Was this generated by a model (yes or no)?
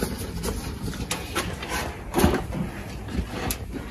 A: no